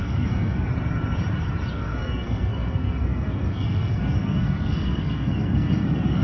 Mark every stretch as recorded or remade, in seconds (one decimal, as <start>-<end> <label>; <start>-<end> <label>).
0.0-0.7 remade; 0.7-1.7 recorded; 1.7-6.2 remade